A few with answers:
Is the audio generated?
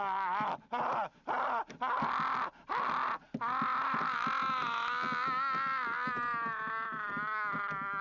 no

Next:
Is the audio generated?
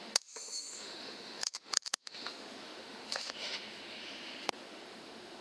yes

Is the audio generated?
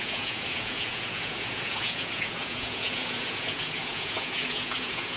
yes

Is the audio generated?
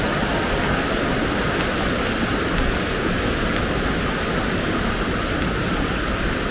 no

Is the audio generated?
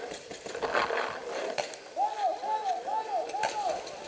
no